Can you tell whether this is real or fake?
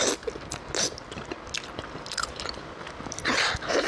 real